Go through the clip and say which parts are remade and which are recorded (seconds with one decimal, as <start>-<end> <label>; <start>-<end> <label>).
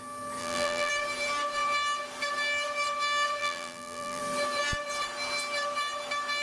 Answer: 0.0-0.4 recorded; 0.4-0.9 remade; 0.9-3.4 recorded; 3.4-4.2 remade; 4.2-6.4 recorded